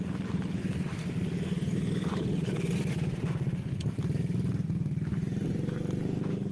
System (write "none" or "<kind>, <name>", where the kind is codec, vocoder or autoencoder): none